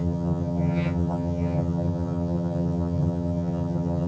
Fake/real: fake